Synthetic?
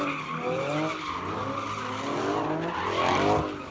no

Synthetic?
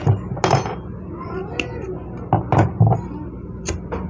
no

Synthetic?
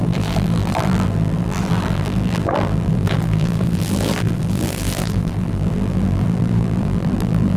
yes